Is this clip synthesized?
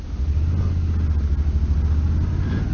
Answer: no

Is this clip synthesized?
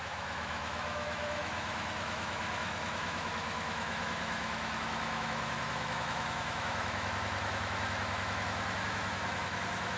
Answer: yes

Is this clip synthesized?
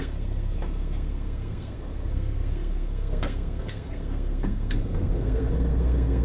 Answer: yes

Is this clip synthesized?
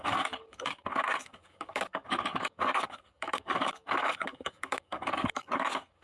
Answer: yes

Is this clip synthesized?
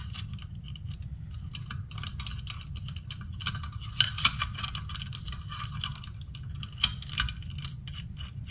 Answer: no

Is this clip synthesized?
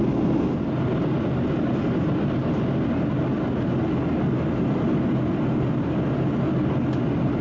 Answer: no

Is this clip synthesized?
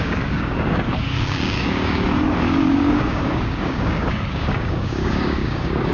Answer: yes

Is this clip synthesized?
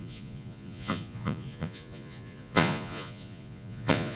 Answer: yes